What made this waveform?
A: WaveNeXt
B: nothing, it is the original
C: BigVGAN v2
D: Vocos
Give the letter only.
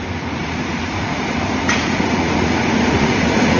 D